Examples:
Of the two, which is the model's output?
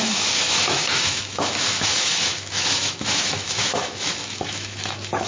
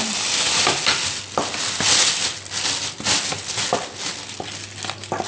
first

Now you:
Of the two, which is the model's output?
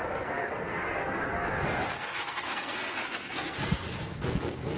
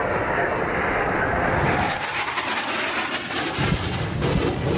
first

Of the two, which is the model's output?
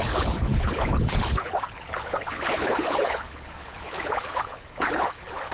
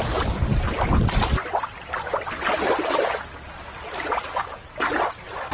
first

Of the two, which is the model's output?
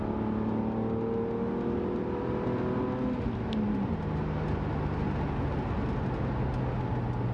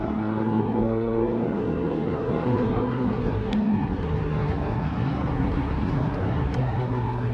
second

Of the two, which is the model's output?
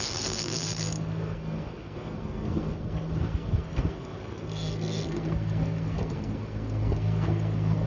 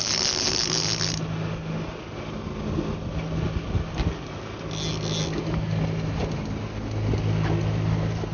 first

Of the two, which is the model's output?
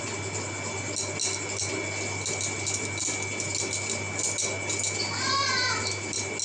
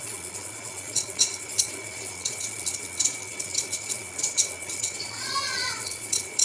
second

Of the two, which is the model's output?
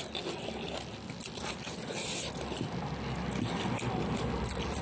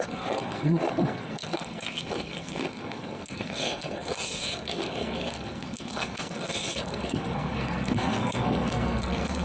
second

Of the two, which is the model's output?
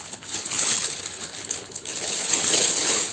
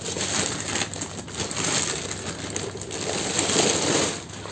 first